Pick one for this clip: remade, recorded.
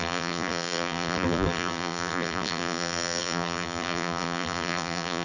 remade